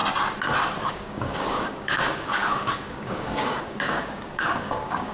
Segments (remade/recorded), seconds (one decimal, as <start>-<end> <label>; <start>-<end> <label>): 0.0-0.9 recorded; 0.9-5.1 remade